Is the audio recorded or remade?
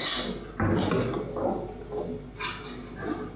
recorded